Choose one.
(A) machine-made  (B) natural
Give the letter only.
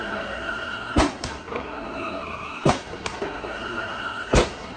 A